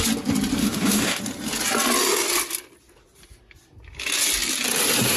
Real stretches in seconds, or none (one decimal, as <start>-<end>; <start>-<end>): 0.0-0.6; 1.2-5.2